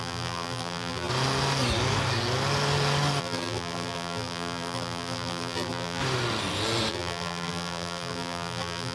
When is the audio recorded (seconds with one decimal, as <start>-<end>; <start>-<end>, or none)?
1.1-3.2; 6.0-6.9

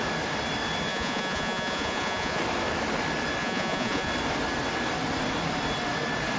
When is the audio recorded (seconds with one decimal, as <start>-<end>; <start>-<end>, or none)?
0.0-0.9; 2.4-3.4; 4.1-6.4

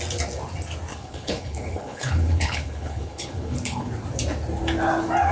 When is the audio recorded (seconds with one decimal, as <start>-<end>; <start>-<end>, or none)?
0.0-0.9; 3.9-5.3

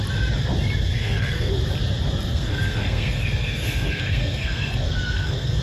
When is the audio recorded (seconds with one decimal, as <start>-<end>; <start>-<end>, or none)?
0.0-0.9; 1.5-2.3

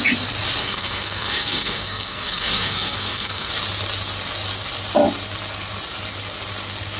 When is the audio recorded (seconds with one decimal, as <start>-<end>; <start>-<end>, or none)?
0.0-0.6; 3.5-7.0

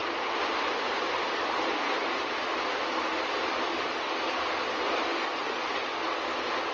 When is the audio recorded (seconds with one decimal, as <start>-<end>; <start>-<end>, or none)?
0.0-6.7

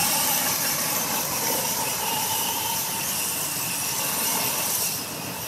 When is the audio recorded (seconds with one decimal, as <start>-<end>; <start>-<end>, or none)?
3.0-5.5

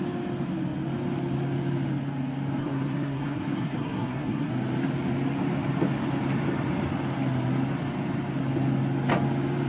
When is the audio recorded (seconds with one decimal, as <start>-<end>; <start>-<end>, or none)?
0.0-2.6; 4.5-9.7